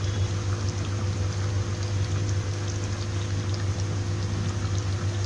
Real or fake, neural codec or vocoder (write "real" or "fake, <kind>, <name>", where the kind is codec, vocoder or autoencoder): real